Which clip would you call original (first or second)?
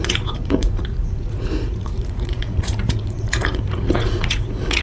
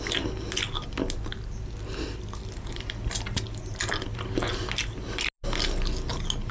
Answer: second